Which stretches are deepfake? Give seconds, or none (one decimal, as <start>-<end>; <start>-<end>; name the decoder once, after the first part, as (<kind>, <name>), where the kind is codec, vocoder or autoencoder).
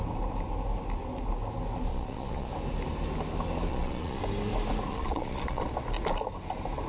1.9-2.5 (vocoder, Vocos); 3.7-4.2; 4.9-5.6